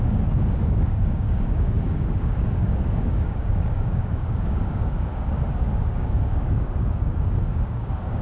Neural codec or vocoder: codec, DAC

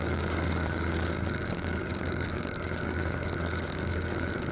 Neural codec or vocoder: codec, DAC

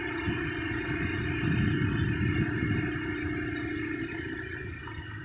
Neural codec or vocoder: none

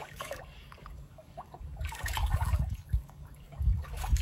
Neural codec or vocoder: codec, DAC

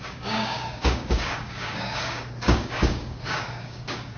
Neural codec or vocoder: codec, DAC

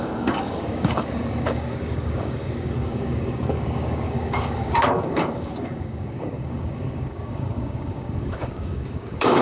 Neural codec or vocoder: codec, DAC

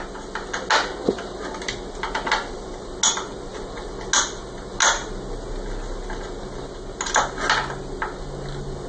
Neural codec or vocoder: none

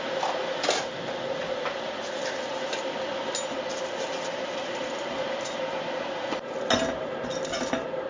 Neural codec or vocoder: none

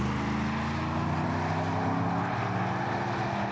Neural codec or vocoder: none